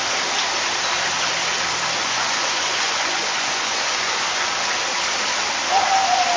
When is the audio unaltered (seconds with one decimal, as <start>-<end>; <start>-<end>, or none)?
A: 0.0-2.0; 4.5-6.4